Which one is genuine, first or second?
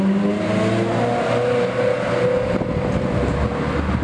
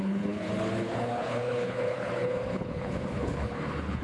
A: first